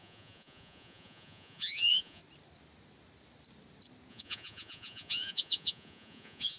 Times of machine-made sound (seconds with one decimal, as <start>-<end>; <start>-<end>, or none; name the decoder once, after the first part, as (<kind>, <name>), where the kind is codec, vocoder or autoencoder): 0.0-2.2 (vocoder, Vocos); 4.1-6.6